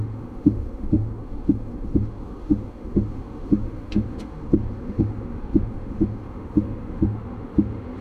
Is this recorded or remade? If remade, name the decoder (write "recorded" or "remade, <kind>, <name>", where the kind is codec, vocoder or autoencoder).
remade, autoencoder, DAC-VAE